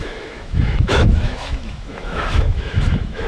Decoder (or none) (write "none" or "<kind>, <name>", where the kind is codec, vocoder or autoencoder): autoencoder, DAC-VAE